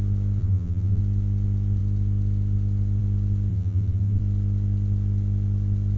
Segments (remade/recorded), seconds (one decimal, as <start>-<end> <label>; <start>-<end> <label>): 0.0-0.4 recorded; 0.4-1.0 remade; 1.0-3.5 recorded; 3.5-4.2 remade; 4.2-6.0 recorded